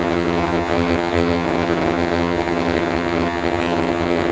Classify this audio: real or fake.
fake